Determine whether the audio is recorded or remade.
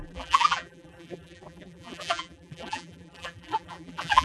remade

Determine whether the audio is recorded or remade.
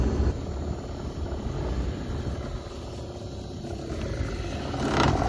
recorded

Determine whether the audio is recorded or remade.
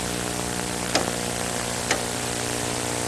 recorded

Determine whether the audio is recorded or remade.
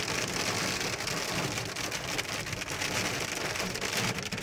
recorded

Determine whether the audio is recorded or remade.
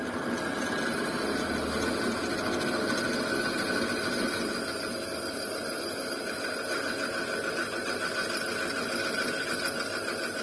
recorded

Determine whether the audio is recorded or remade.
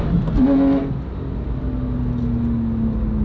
recorded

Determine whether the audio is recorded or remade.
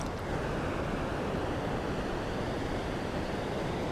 remade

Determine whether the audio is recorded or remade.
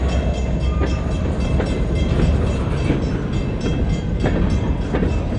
recorded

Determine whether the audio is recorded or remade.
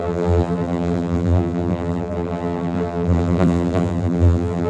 remade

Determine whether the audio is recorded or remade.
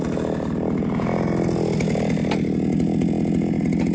recorded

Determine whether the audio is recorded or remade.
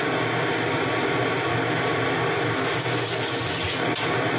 recorded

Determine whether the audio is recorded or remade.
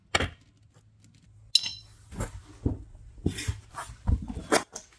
recorded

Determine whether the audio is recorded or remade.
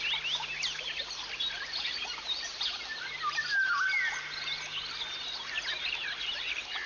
recorded